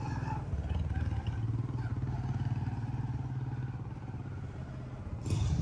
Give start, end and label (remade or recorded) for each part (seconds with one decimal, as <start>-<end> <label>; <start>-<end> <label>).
0.0-5.6 recorded